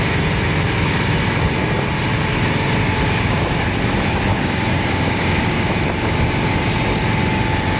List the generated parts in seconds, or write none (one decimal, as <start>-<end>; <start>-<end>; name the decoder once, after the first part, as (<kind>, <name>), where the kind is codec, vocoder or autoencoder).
2.8-3.6 (codec, DAC); 4.3-5.7

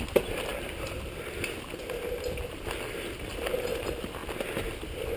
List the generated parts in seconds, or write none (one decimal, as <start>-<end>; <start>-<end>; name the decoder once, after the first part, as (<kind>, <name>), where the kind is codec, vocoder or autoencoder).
none

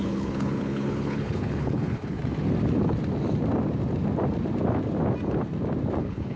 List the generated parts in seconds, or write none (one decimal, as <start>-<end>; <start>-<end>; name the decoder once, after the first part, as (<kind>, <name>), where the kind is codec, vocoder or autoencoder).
0.0-2.2 (codec, HILCodec); 6.0-6.4

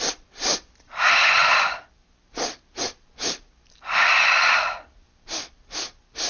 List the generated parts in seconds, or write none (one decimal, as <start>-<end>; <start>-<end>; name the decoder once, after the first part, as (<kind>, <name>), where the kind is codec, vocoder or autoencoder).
none